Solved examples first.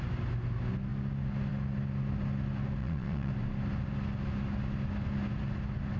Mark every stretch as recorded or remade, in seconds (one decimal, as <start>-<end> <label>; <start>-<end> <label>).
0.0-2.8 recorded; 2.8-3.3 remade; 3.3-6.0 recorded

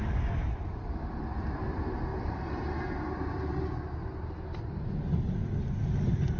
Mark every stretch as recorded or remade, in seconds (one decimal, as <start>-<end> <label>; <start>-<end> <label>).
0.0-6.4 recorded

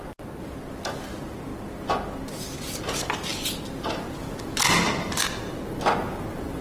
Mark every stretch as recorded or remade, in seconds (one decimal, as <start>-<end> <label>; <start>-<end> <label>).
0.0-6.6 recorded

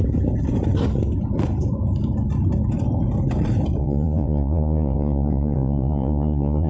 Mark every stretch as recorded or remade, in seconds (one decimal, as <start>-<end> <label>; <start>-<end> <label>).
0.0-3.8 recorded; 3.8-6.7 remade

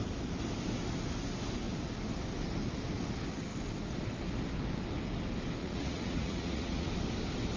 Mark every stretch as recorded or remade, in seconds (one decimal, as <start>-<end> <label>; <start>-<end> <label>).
0.0-5.6 recorded; 5.6-6.9 remade; 6.9-7.6 recorded

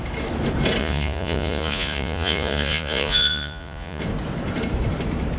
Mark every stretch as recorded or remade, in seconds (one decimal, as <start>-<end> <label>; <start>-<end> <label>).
0.0-0.8 recorded; 0.8-4.0 remade; 4.0-5.4 recorded

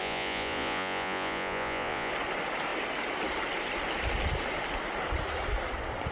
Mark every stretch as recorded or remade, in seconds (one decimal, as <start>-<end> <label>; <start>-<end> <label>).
0.0-2.1 remade; 2.1-6.1 recorded